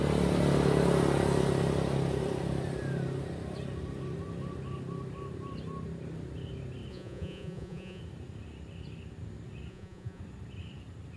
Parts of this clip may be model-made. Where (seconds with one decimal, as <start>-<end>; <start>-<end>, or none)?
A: 6.9-8.0; 9.7-10.2